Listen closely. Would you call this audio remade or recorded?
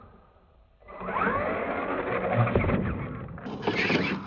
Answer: recorded